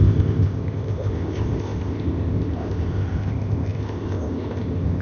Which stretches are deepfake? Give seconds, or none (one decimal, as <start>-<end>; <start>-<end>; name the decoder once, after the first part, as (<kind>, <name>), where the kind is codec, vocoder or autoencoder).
0.0-5.0 (codec, ZipCodec)